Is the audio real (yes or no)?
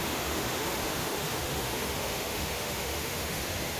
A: no